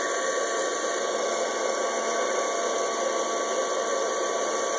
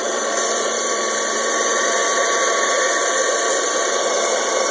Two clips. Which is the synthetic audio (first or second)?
second